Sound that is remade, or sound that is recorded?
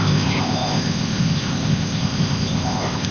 remade